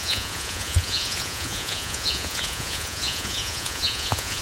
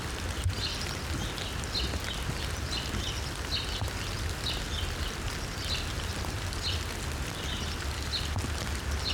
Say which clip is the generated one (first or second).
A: first